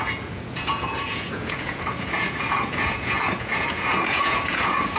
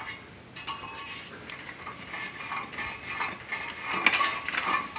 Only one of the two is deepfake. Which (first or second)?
first